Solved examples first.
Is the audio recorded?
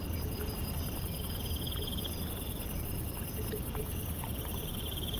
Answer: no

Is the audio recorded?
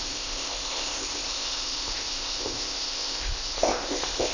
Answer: no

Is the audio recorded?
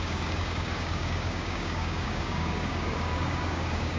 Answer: no